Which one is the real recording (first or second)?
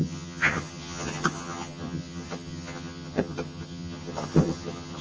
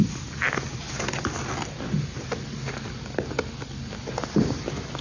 second